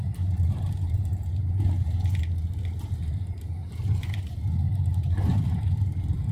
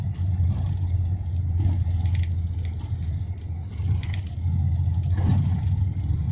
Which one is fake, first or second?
first